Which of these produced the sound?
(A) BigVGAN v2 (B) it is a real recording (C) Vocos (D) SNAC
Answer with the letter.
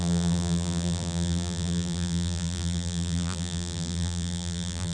A